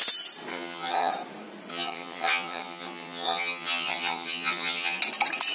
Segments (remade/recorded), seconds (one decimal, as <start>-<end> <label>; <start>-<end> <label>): 0.0-0.5 recorded; 0.5-1.1 remade; 1.1-1.7 recorded; 1.7-5.0 remade; 5.0-5.5 recorded